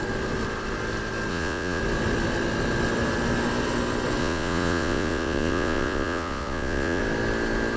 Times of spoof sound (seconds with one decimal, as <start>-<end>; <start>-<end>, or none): 1.3-1.8; 4.2-7.0